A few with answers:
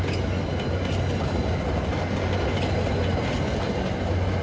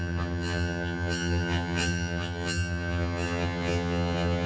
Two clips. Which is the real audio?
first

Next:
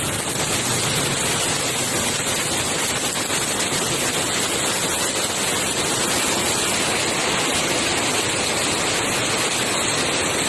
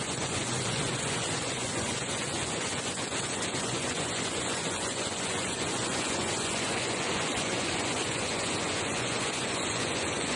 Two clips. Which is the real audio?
first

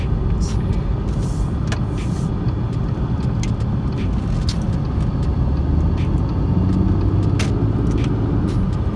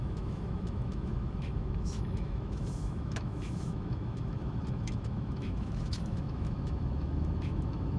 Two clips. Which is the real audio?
first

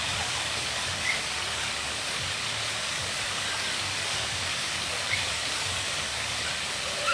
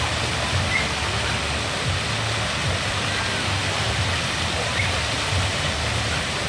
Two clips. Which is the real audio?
second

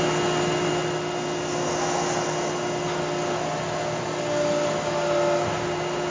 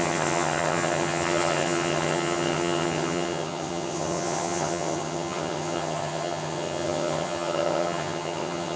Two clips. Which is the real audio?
first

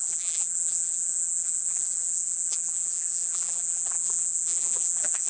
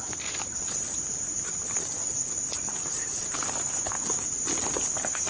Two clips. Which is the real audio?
second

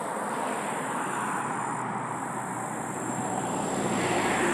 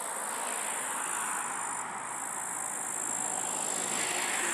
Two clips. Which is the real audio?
second